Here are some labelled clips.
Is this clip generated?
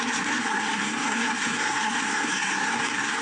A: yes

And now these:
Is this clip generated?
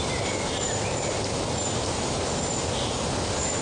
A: no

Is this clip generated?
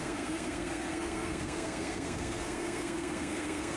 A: yes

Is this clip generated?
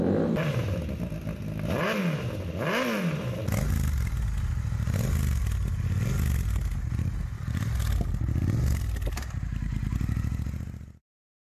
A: no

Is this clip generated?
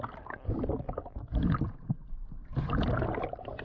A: no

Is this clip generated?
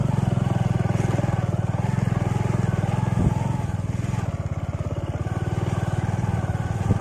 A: no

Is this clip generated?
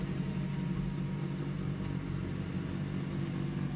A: no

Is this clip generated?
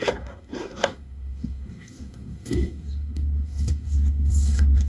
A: yes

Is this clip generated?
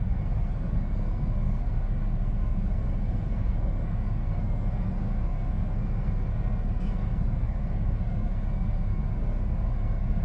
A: yes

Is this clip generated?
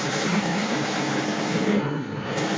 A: yes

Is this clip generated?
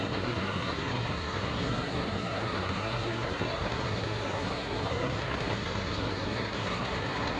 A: yes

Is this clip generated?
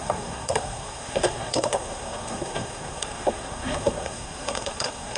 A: yes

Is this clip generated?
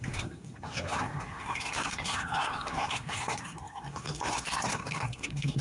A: yes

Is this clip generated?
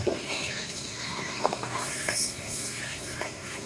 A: yes